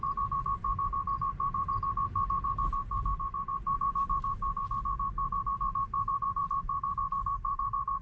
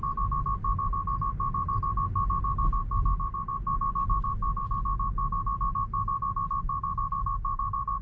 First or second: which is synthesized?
first